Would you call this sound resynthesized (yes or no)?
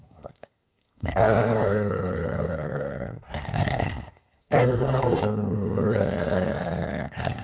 yes